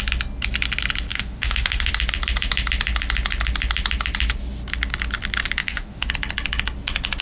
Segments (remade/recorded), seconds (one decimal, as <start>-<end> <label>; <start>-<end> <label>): 0.0-1.1 recorded; 1.1-1.9 remade; 1.9-5.6 recorded; 5.6-6.1 remade; 6.1-7.2 recorded